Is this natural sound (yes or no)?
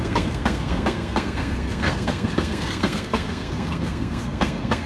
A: no